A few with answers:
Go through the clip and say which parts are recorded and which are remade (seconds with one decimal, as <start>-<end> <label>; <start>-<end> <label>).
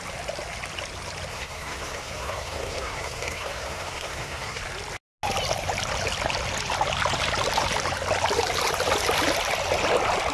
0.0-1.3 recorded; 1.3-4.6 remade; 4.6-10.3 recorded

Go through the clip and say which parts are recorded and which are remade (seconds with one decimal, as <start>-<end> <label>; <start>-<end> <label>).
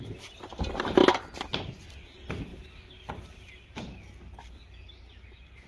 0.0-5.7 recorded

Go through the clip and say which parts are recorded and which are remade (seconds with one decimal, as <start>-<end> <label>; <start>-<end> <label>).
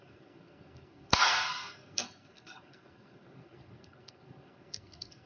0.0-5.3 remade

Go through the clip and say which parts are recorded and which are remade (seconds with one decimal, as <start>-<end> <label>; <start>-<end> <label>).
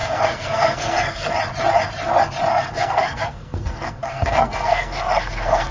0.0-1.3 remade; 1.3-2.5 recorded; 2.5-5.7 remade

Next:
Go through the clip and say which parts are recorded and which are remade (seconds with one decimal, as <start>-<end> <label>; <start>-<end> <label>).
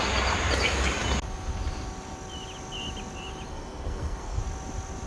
0.0-3.5 recorded; 3.5-4.4 remade; 4.4-5.1 recorded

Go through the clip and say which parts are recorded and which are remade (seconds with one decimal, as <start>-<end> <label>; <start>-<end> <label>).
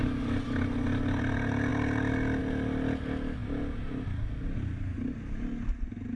0.0-6.2 recorded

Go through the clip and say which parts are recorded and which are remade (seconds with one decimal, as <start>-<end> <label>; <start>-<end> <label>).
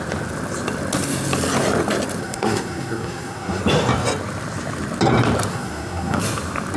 0.0-2.2 recorded; 2.2-3.6 remade; 3.6-5.5 recorded; 5.5-6.2 remade; 6.2-6.8 recorded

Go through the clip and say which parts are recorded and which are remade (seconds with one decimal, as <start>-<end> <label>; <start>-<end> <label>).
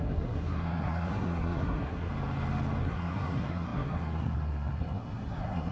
0.0-2.1 remade; 2.1-2.8 recorded; 2.8-5.7 remade